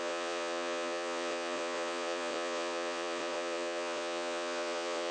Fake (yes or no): yes